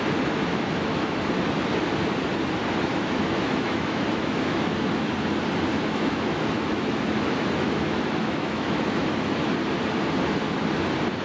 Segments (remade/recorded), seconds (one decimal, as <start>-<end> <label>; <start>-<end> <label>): 0.0-0.5 recorded; 0.5-1.2 remade; 1.2-2.9 recorded; 2.9-5.1 remade; 5.1-5.7 recorded; 5.7-9.5 remade; 9.5-11.2 recorded